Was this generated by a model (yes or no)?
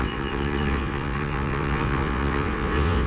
yes